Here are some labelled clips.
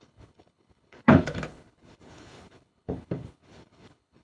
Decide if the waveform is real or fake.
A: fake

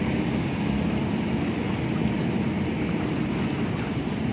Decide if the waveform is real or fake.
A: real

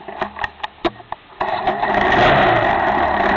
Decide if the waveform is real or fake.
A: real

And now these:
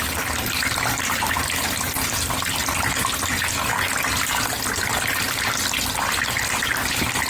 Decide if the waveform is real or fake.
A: real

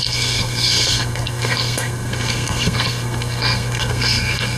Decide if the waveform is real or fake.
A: fake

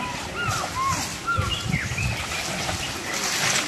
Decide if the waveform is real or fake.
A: real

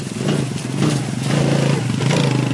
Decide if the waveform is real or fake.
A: real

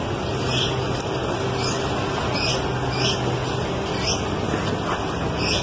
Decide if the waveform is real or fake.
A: real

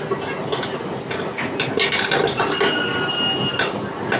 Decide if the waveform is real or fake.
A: real